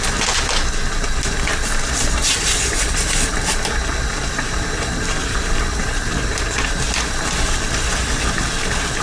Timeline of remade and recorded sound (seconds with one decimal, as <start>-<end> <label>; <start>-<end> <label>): 0.0-1.5 recorded; 1.5-6.5 remade; 6.5-9.0 recorded

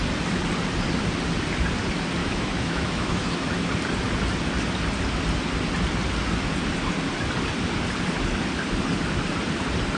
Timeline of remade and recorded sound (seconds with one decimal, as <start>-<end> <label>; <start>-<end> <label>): 0.0-2.2 recorded; 2.2-3.7 remade; 3.7-10.0 recorded

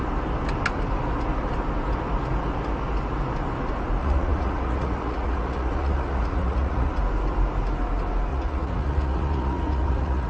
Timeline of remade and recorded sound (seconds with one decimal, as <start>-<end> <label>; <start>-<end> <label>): 0.0-4.0 recorded; 4.0-7.0 remade; 7.0-8.3 recorded; 8.3-10.3 remade

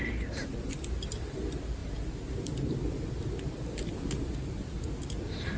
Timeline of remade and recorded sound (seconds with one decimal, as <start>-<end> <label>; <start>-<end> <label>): 0.0-5.6 recorded

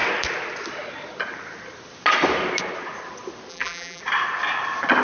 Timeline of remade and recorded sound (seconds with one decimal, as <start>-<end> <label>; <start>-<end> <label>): 0.0-3.5 recorded; 3.5-4.0 remade; 4.0-5.0 recorded